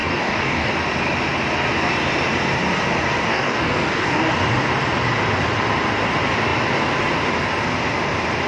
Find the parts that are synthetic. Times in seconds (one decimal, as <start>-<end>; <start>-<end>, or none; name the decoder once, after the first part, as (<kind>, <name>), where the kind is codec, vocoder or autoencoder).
0.0-0.7 (codec, DAC); 3.3-4.3